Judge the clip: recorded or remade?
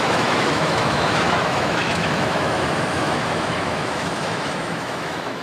remade